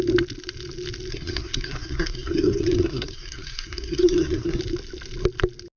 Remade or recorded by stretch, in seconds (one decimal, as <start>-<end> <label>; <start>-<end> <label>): 0.0-1.1 recorded; 1.1-4.6 remade; 4.6-5.8 recorded